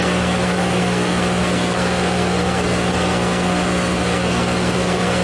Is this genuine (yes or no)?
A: no